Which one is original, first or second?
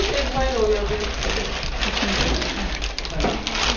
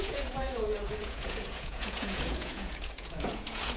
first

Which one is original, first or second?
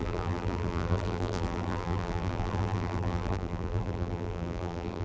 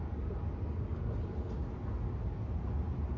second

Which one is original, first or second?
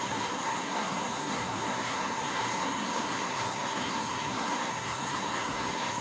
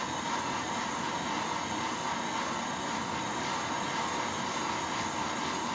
second